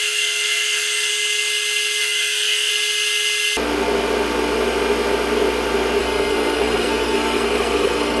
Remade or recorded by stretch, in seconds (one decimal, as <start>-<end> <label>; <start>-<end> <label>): 0.0-1.1 remade; 1.1-2.0 recorded; 2.0-2.7 remade; 2.7-6.0 recorded; 6.0-8.2 remade